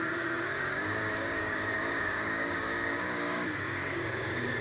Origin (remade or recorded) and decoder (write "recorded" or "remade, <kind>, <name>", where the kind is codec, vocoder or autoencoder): remade, codec, DAC